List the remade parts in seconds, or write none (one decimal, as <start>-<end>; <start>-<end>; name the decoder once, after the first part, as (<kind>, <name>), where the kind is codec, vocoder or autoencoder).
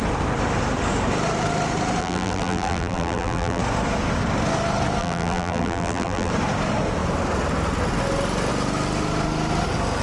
2.0-3.6 (vocoder, BigVGAN v2); 5.0-6.3